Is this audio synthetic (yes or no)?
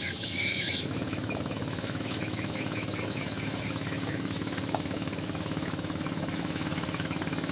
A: yes